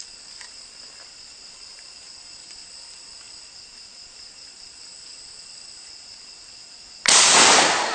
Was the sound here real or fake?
real